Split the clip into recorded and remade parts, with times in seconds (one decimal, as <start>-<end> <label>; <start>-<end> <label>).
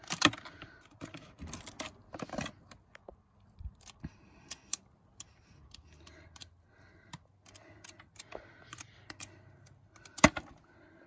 0.0-3.1 recorded; 3.1-4.2 remade; 4.2-11.1 recorded